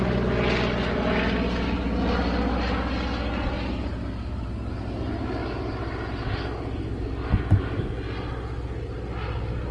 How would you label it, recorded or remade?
recorded